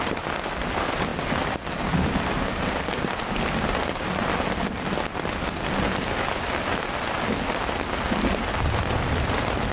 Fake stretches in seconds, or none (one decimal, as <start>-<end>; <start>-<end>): none